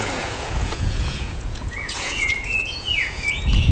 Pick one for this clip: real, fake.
fake